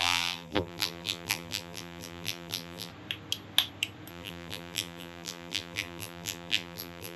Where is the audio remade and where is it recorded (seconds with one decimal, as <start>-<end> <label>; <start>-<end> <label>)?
0.0-2.9 remade; 2.9-4.1 recorded; 4.1-7.2 remade